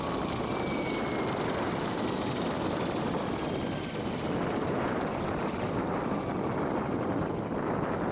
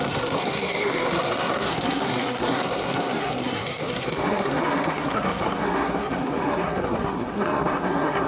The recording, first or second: first